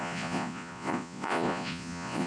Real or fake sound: fake